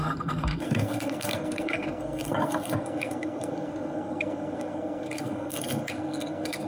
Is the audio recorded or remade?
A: remade